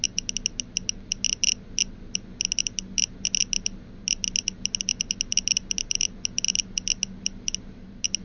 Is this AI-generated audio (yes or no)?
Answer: no